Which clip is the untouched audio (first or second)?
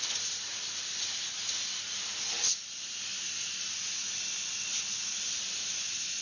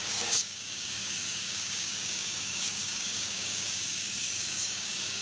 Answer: first